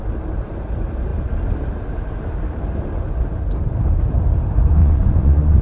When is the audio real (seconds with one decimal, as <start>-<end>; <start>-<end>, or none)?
0.0-4.8